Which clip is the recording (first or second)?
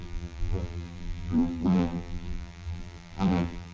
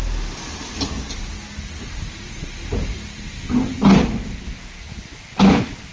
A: second